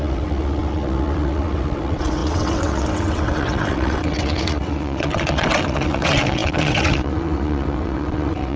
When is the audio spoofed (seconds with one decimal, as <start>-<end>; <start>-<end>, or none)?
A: 0.0-8.6